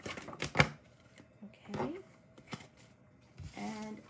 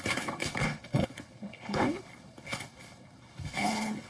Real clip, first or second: first